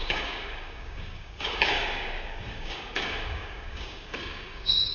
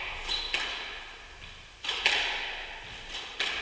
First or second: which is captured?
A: second